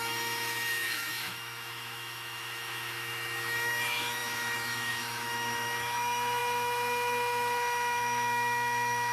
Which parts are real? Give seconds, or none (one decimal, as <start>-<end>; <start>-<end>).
none